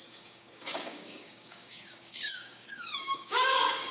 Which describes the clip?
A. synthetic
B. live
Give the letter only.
A